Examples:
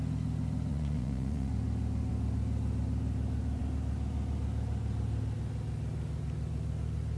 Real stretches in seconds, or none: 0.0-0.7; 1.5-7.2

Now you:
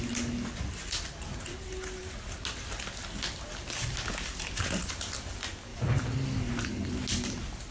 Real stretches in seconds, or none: 0.0-7.7

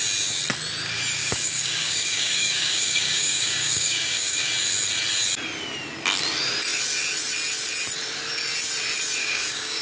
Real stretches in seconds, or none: 0.0-1.2; 4.5-9.2